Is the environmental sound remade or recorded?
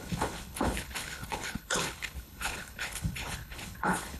remade